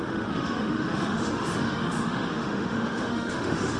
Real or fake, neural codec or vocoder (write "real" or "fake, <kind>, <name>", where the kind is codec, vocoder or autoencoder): fake, autoencoder, DAC-VAE